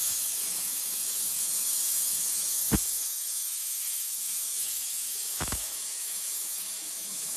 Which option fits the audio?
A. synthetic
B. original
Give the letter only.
A